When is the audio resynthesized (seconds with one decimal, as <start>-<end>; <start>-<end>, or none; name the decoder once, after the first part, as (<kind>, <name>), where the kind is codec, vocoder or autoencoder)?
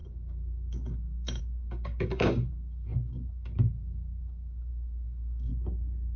0.0-5.5 (codec, DAC)